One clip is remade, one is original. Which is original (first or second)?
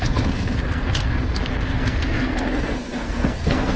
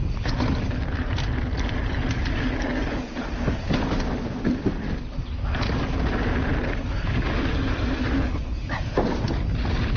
second